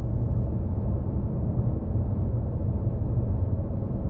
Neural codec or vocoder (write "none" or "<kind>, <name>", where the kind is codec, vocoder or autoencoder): none